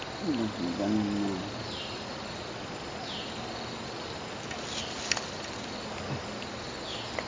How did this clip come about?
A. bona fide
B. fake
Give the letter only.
A